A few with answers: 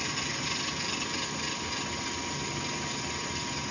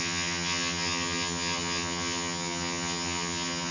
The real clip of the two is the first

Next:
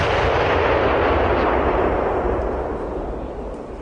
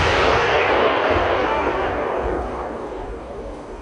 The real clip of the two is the first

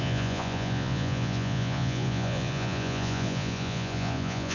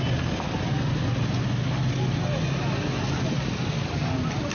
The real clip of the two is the second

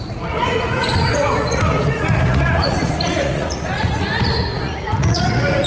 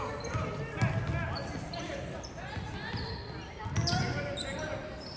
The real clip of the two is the second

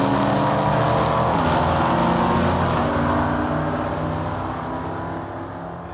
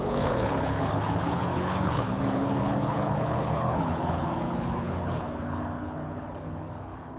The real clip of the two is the first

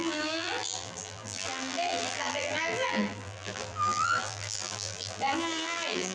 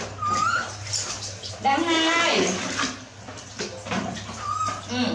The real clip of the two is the second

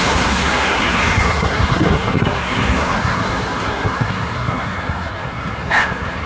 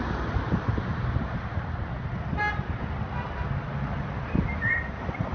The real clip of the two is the second